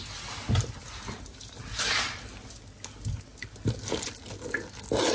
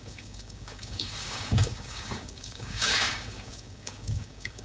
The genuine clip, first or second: first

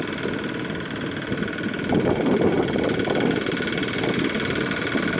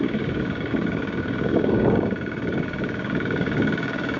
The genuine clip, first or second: first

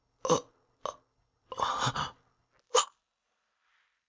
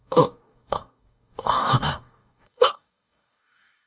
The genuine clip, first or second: first